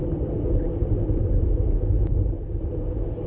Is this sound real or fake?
real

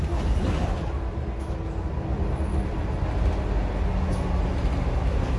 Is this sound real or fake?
real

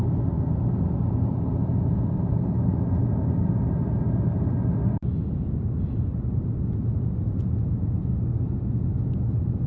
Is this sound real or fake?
real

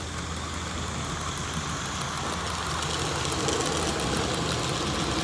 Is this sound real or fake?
real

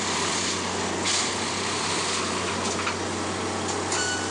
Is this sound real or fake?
real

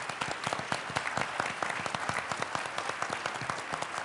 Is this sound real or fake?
real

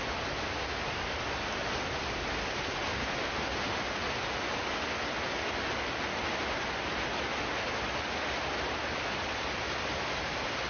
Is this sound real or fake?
real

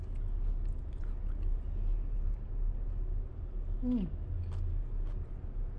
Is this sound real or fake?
real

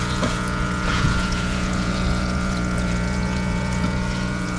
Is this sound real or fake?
fake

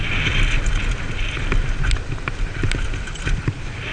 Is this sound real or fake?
real